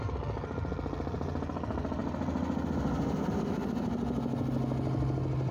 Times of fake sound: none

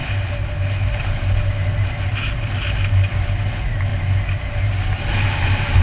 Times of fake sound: none

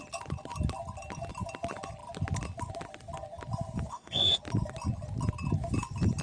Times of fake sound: 3.9-4.4 (codec, SNAC)